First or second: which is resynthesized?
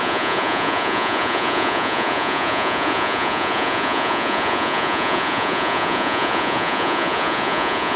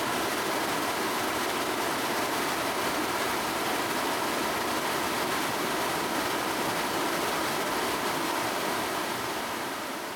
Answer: first